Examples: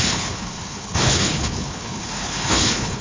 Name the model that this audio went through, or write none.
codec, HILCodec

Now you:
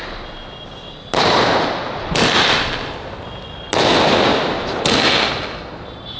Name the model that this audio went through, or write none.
none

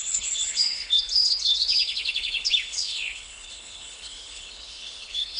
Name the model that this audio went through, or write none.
codec, HILCodec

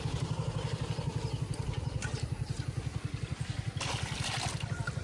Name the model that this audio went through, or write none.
none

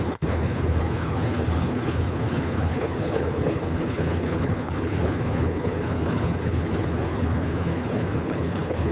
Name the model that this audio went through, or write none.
codec, HILCodec